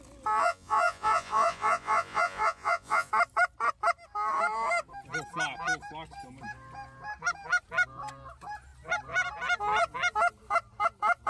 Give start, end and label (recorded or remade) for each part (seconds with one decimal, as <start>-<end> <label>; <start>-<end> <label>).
0.0-0.4 recorded; 0.4-3.1 remade; 3.1-11.3 recorded